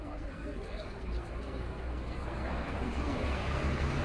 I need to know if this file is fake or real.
fake